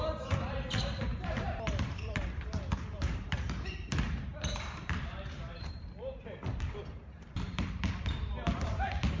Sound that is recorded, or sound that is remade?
remade